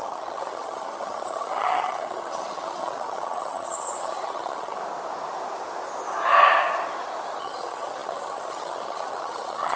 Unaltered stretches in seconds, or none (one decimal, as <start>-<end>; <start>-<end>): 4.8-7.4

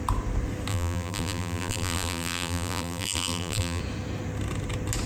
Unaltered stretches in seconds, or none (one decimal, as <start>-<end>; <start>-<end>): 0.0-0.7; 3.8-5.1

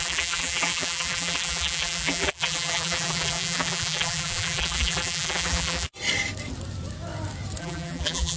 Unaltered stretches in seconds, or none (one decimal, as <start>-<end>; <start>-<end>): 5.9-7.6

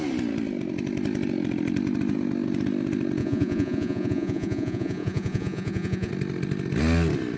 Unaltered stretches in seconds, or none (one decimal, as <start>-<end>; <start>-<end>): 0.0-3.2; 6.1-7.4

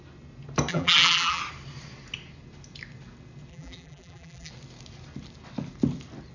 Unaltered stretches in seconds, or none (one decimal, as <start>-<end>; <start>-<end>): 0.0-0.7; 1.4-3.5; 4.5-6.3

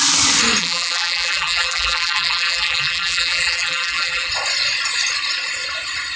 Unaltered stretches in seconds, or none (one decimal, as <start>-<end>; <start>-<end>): 0.0-0.6; 4.3-6.2